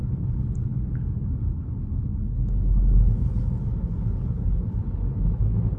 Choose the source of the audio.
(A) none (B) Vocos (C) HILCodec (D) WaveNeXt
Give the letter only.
C